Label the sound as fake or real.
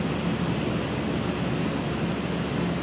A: real